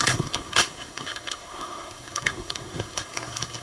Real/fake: fake